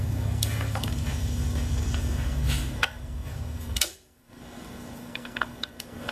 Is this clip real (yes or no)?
no